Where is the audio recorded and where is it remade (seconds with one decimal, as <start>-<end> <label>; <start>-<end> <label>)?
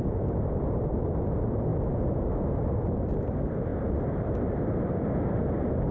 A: 0.0-5.9 recorded